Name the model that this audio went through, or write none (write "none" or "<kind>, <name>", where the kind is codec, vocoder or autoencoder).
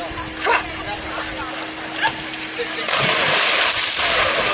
none